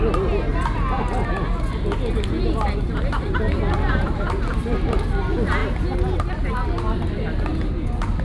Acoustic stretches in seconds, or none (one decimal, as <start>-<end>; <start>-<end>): 0.0-8.2